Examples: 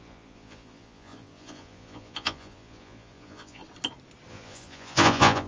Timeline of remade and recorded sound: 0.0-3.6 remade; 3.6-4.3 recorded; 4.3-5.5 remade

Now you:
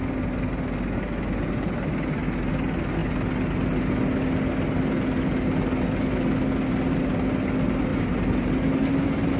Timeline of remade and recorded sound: 0.0-9.4 recorded

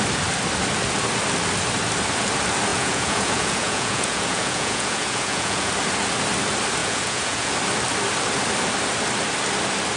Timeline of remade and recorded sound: 0.0-2.7 recorded; 2.7-5.7 remade; 5.7-6.8 recorded; 6.8-7.5 remade; 7.5-10.0 recorded

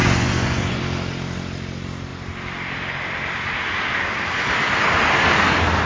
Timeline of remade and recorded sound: 0.0-0.8 remade; 0.8-5.9 recorded

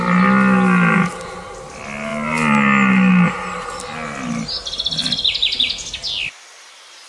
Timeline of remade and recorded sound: 0.0-7.1 recorded